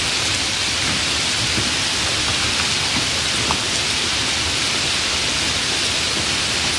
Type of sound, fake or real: real